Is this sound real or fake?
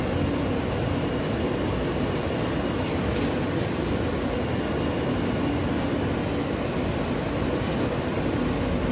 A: real